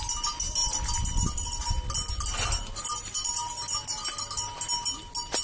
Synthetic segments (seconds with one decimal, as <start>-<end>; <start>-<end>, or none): none